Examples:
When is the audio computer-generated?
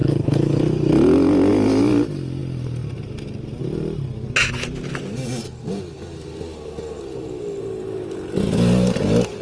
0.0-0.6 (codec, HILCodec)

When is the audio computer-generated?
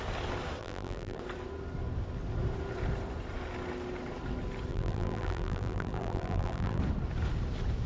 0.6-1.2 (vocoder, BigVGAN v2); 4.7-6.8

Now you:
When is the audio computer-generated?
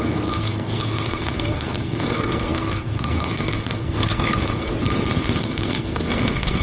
0.0-4.7 (codec, SNAC); 5.4-6.6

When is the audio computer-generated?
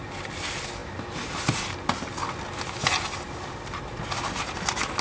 none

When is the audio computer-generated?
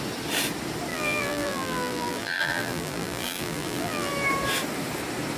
0.9-4.1 (vocoder, BigVGAN v2)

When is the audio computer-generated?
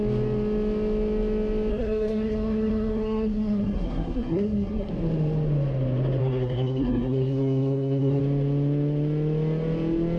1.7-4.9 (codec, SNAC); 6.2-8.2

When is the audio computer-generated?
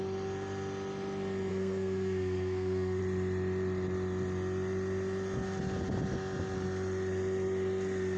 1.5-3.0 (codec, SNAC)